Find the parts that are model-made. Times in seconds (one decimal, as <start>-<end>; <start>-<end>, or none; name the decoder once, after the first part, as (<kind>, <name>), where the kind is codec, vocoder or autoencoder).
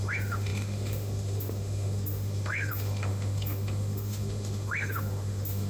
0.0-5.7 (autoencoder, DAC-VAE)